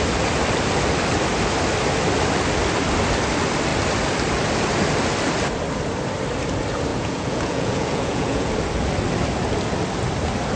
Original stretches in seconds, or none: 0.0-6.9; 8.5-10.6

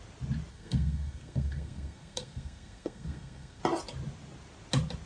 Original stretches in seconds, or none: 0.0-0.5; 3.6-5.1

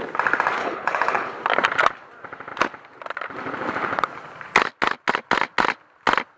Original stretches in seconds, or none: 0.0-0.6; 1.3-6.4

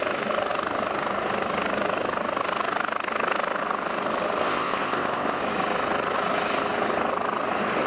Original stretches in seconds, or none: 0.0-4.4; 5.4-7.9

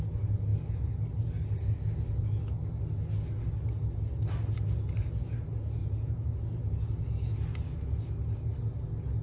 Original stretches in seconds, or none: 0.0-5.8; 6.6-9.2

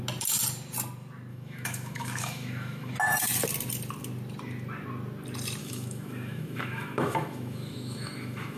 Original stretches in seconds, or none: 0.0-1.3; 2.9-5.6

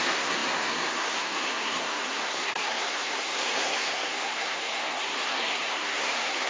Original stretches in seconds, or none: none